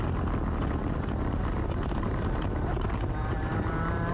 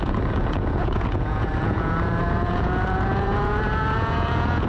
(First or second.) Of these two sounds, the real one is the first